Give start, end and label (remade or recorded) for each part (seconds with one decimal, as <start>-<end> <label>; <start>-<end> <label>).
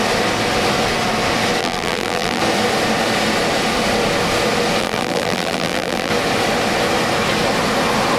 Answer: 0.0-1.6 recorded; 1.6-2.4 remade; 2.4-4.8 recorded; 4.8-6.1 remade; 6.1-8.2 recorded